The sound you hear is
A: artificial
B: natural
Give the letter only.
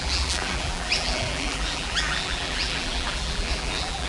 A